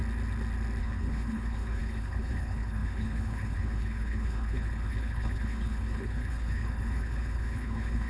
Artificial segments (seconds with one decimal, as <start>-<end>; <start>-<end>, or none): 0.8-8.1